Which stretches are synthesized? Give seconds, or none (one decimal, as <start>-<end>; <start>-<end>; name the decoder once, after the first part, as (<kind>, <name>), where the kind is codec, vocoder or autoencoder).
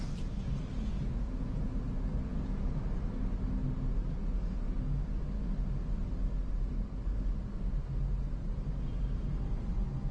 0.7-1.6 (vocoder, Vocos); 2.3-2.8